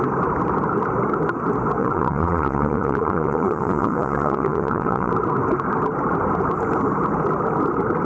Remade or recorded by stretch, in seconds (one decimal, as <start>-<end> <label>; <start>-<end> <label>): 0.0-1.8 recorded; 1.8-5.1 remade; 5.1-8.0 recorded

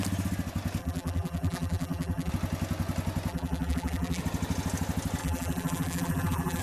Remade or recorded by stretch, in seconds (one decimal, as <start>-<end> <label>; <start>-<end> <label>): 0.0-0.8 recorded; 0.8-2.3 remade; 2.3-3.3 recorded; 3.3-4.2 remade; 4.2-5.2 recorded; 5.2-6.6 remade

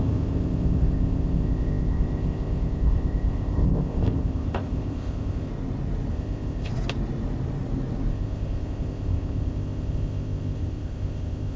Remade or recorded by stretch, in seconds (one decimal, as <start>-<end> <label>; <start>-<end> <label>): 0.0-5.5 remade; 5.5-6.1 recorded; 6.1-6.7 remade; 6.7-8.1 recorded; 8.1-11.6 remade

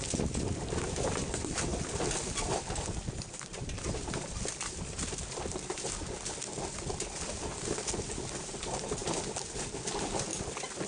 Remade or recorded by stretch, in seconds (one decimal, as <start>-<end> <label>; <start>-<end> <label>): 0.0-9.0 remade; 9.0-9.5 recorded; 9.5-10.9 remade

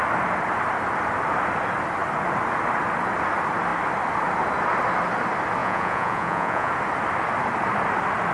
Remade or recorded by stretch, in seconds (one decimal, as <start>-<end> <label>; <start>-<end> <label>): 0.0-5.6 recorded; 5.6-6.7 remade; 6.7-8.3 recorded

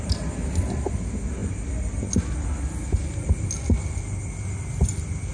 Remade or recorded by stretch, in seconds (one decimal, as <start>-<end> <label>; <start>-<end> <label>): 0.0-5.3 recorded

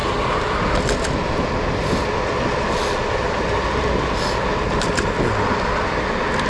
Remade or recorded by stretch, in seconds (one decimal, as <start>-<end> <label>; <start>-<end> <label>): 0.0-6.5 recorded

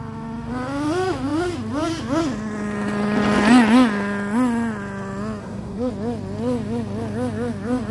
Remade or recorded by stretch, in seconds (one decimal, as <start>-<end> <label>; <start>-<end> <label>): 0.0-5.4 recorded; 5.4-5.9 remade; 5.9-7.9 recorded